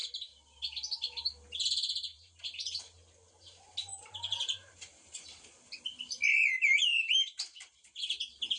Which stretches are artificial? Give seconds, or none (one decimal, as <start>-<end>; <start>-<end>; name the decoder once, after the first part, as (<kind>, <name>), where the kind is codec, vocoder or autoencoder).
2.1-2.8 (vocoder, BigVGAN v2); 3.9-5.4; 6.3-7.1